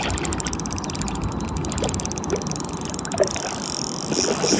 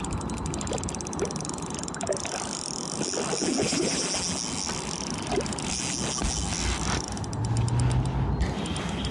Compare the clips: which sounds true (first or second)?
second